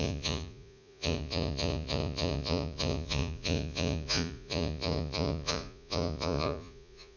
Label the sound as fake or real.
fake